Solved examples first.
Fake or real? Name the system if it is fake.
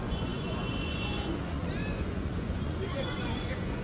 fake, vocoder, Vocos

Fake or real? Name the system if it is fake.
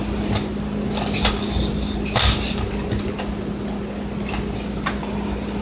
real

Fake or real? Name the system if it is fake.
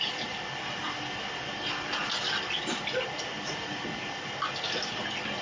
real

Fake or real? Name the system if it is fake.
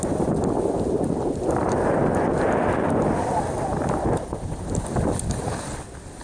real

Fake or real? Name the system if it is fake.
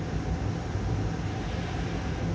real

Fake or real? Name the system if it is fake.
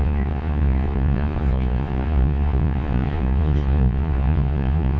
fake, vocoder, Vocos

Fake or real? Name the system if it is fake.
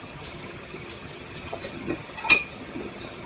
fake, vocoder, HiFi-GAN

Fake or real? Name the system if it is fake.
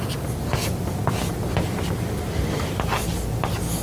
real